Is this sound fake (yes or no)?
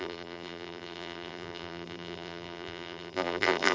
yes